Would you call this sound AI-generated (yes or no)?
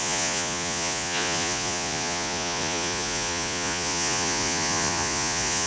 yes